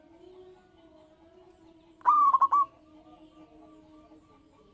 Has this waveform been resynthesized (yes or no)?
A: no